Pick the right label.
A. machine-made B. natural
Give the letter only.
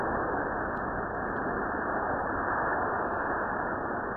B